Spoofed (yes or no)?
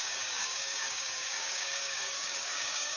yes